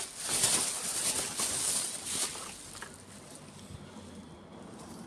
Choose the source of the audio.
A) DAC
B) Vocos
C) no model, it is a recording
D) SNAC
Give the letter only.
C